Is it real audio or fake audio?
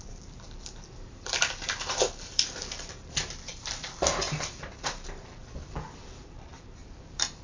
fake